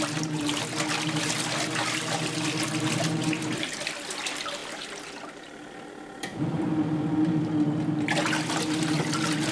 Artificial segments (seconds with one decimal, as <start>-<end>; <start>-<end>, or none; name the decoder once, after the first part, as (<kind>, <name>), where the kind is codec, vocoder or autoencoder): 4.6-5.2 (vocoder, BigVGAN v2); 6.3-7.4